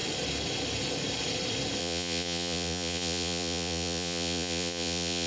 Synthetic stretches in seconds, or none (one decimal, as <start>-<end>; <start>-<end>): 1.8-5.3